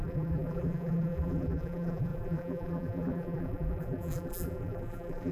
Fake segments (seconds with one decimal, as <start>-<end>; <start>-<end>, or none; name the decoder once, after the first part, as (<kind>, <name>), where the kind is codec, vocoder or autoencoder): 0.0-5.3 (vocoder, BigVGAN v2)